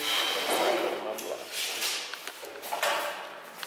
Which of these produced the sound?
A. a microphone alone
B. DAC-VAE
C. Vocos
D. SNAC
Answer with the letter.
A